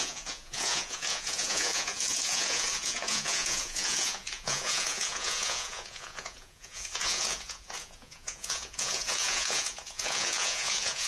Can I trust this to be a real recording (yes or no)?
no